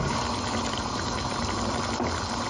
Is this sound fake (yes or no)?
no